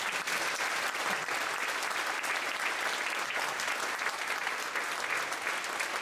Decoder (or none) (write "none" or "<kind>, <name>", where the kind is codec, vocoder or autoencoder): none